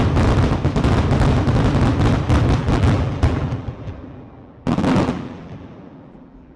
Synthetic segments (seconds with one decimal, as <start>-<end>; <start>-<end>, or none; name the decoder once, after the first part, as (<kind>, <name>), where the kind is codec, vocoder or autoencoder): 2.6-6.6 (vocoder, BigVGAN v2)